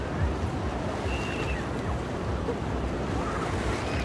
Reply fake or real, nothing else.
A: real